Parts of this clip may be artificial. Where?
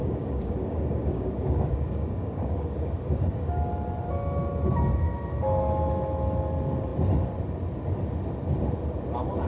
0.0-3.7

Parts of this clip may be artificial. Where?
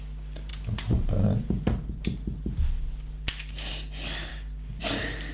4.3-4.8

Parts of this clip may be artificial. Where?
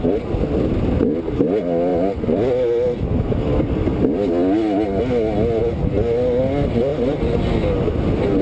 none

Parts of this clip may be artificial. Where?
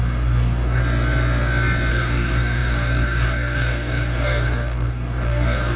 0.0-0.8; 1.9-5.8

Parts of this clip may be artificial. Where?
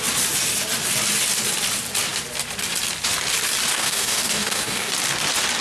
3.7-4.9